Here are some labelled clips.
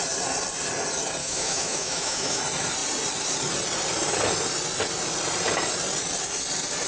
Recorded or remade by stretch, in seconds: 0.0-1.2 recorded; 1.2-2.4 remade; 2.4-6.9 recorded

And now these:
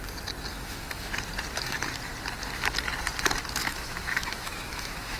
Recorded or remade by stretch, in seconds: 0.0-0.5 recorded; 0.5-1.1 remade; 1.1-3.6 recorded; 3.6-5.2 remade

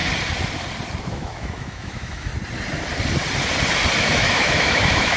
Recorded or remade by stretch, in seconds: 0.0-1.0 recorded; 1.0-2.3 remade; 2.3-4.0 recorded; 4.0-5.2 remade

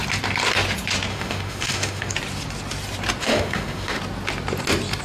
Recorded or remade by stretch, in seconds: 0.0-1.1 recorded; 1.1-2.1 remade; 2.1-3.2 recorded; 3.2-4.0 remade; 4.0-5.0 recorded

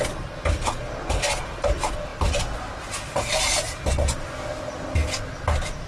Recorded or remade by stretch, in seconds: 0.0-5.9 recorded